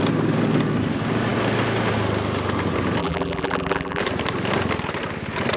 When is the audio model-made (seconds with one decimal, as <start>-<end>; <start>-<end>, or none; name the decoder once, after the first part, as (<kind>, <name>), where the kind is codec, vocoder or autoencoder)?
3.0-4.0 (vocoder, BigVGAN v2)